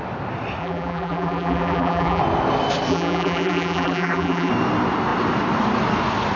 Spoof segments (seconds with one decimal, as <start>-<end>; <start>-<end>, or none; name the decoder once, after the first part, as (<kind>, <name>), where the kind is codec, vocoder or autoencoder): 0.6-2.2 (vocoder, BigVGAN v2); 2.9-4.5